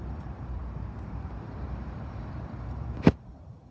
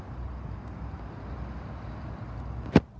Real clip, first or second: second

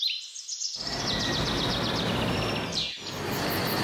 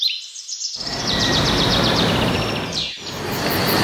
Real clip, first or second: first